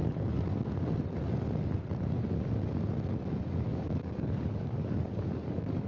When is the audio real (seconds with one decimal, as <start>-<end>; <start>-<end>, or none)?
0.0-3.7

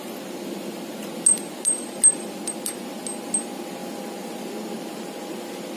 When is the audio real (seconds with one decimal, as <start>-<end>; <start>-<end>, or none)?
0.0-5.8

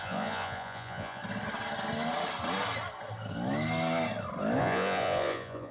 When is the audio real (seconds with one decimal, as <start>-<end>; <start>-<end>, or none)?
1.2-4.6

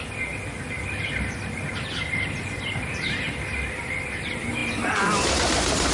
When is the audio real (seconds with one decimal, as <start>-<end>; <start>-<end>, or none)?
0.0-5.9

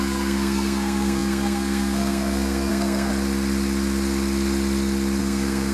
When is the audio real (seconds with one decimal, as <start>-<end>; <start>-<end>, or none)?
3.1-5.2

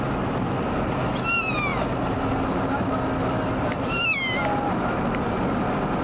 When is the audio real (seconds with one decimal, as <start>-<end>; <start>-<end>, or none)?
0.0-6.0